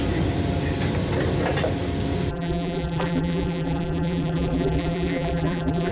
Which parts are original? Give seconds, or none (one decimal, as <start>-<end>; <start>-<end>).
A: 0.0-2.3